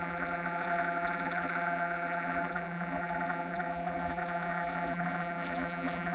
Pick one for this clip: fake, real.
fake